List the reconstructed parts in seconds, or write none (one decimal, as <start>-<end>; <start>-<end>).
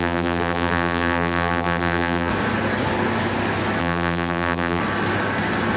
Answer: 0.0-2.3; 3.8-4.8